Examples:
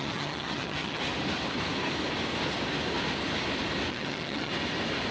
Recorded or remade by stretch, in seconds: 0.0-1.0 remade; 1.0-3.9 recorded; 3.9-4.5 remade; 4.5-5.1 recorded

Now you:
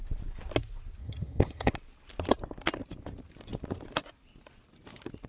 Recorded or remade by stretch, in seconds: 0.0-1.0 recorded; 1.0-1.7 remade; 1.7-5.3 recorded

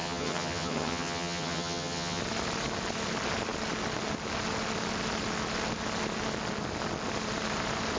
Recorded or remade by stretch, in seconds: 0.0-2.2 remade; 2.2-8.0 recorded

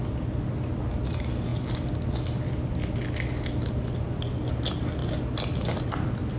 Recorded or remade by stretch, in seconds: 0.0-6.4 recorded

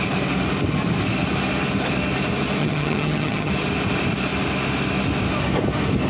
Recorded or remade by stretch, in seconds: 0.0-2.6 recorded; 2.6-3.5 remade; 3.5-6.1 recorded

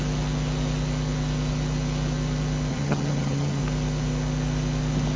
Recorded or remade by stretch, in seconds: 0.0-2.7 recorded; 2.7-3.6 remade; 3.6-5.2 recorded